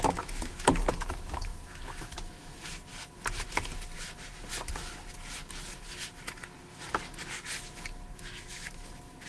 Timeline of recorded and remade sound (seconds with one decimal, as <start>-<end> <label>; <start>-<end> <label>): 0.0-2.9 remade; 2.9-8.1 recorded; 8.1-9.3 remade